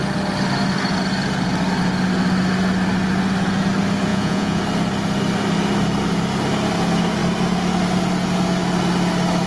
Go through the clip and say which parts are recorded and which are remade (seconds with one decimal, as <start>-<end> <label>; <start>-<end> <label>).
0.0-4.1 recorded; 4.1-4.6 remade; 4.6-9.5 recorded